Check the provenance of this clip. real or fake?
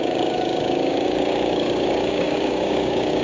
fake